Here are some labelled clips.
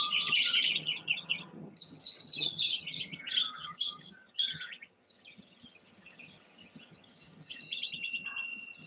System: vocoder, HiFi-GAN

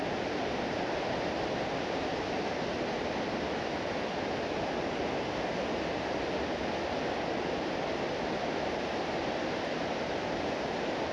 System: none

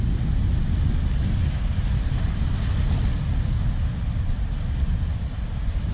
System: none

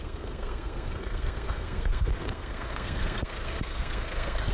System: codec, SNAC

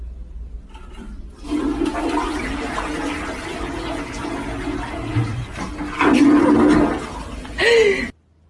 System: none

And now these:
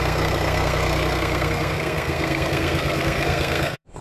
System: codec, SNAC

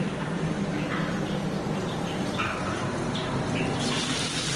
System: vocoder, BigVGAN v2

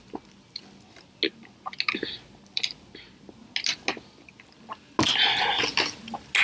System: none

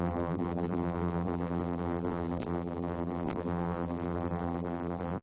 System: vocoder, BigVGAN v2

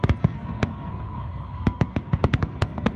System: codec, SNAC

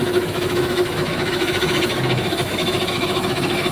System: autoencoder, DAC-VAE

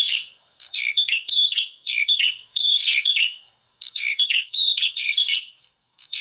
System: codec, SNAC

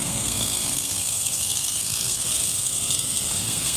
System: codec, SNAC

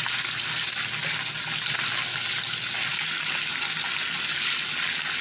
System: none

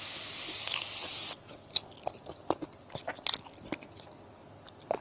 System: none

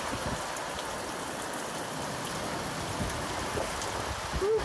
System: none